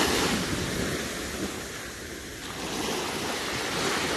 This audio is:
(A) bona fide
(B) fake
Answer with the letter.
A